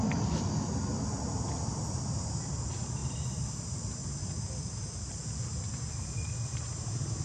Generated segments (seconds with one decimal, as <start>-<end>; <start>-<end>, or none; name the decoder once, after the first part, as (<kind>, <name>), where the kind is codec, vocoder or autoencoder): 3.0-5.1 (vocoder, BigVGAN v2); 5.5-7.2